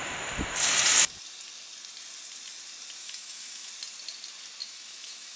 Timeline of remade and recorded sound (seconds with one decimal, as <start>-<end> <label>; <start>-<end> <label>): 0.0-3.0 recorded; 3.0-3.7 remade; 3.7-4.6 recorded; 4.6-5.4 remade

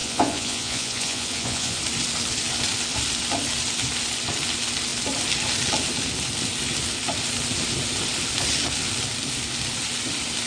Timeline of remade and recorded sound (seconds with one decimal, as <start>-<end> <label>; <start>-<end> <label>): 0.0-1.8 remade; 1.8-10.5 recorded

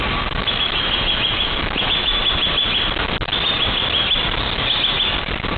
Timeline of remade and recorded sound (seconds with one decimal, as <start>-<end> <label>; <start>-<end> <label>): 0.0-0.4 recorded; 0.4-2.2 remade; 2.2-5.6 recorded

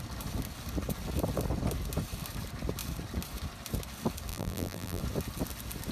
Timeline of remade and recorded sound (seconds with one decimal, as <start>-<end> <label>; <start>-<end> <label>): 0.0-4.3 recorded; 4.3-5.0 remade; 5.0-5.9 recorded

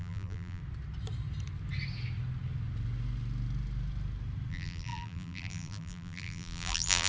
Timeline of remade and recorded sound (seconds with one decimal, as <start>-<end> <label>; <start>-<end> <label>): 0.0-0.6 remade; 0.6-4.5 recorded; 4.5-7.1 remade

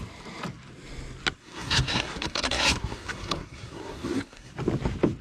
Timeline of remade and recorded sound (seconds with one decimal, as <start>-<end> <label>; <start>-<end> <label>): 0.0-1.4 recorded; 1.4-4.5 remade; 4.5-5.2 recorded

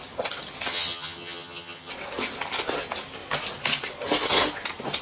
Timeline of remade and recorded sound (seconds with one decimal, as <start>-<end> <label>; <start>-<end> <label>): 0.0-0.7 recorded; 0.7-1.9 remade; 1.9-5.0 recorded